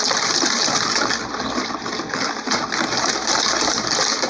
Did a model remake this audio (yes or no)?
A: no